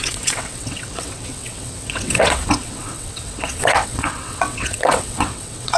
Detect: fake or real fake